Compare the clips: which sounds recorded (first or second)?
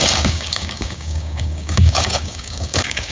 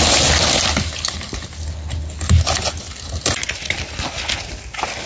second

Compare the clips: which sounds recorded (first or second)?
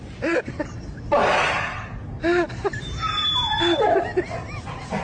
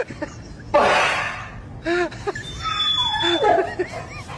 second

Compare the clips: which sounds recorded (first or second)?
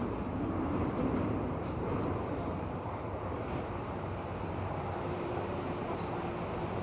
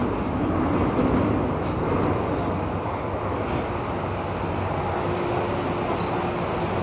second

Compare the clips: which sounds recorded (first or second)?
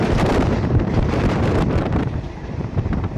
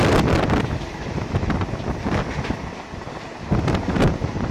second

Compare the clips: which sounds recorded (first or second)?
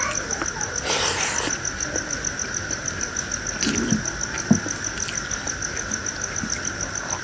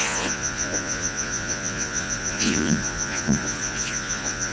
first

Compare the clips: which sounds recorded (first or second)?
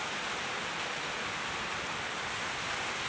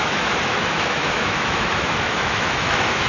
first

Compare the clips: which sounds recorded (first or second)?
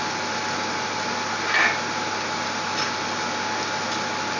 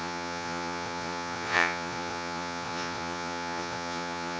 first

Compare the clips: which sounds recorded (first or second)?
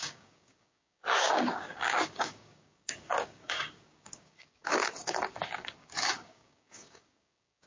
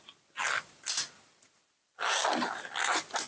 second